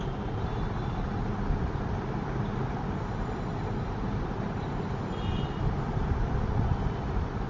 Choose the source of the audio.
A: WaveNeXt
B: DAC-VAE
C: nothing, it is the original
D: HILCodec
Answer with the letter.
C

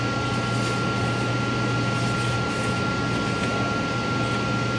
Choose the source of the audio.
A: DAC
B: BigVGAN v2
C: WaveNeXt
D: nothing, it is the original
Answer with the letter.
D